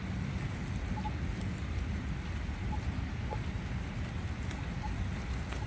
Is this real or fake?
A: real